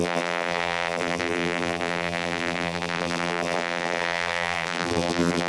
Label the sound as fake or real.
fake